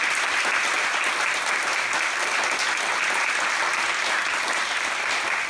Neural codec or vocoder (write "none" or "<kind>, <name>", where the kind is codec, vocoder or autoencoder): none